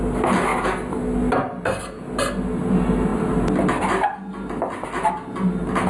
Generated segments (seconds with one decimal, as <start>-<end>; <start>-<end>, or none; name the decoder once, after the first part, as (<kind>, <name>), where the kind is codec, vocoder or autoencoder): none

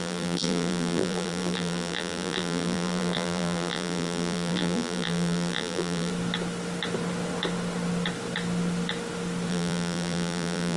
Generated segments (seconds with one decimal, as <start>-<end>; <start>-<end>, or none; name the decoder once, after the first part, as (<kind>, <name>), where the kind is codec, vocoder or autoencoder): 0.0-6.1 (vocoder, BigVGAN v2); 9.5-10.8

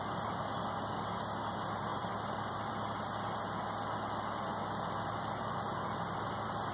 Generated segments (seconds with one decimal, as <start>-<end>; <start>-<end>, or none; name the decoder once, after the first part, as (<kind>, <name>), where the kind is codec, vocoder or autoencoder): 1.9-3.6 (vocoder, BigVGAN v2)

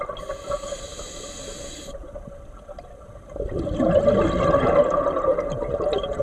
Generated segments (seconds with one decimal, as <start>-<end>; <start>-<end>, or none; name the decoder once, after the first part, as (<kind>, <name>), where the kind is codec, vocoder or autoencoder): none

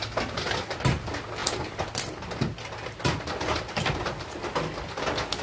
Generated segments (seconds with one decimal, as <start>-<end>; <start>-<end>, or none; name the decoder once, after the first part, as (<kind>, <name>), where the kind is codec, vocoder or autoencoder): none

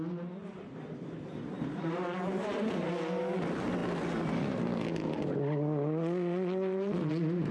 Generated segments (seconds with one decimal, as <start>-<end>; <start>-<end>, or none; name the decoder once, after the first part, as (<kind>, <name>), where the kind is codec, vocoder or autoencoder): 0.4-3.2 (vocoder, BigVGAN v2)

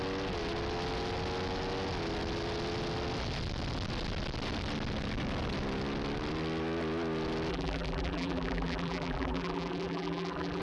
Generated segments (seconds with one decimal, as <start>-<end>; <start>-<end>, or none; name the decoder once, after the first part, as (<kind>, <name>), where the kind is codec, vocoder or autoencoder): 7.5-10.6 (vocoder, BigVGAN v2)